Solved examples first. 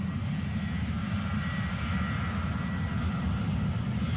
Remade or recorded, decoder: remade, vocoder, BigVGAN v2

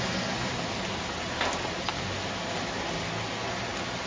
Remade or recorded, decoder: recorded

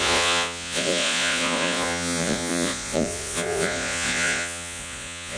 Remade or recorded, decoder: remade, vocoder, Vocos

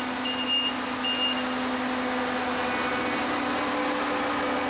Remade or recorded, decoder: recorded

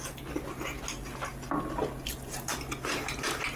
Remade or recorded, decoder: recorded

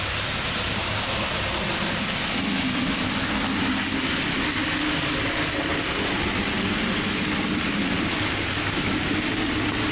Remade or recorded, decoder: recorded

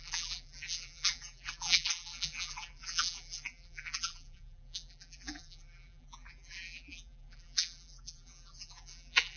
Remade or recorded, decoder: remade, vocoder, BigVGAN v2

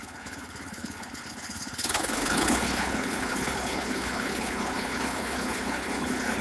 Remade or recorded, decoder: remade, codec, HILCodec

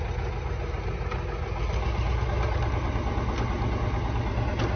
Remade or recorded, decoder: recorded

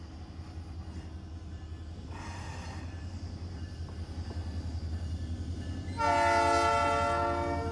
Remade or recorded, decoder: recorded